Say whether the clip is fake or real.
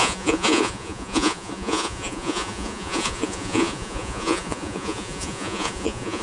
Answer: fake